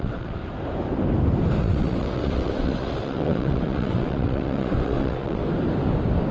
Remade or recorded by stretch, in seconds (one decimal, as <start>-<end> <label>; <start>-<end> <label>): 0.0-0.4 remade; 0.4-1.6 recorded; 1.6-5.4 remade; 5.4-6.3 recorded